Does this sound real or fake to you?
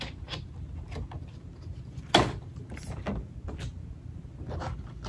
real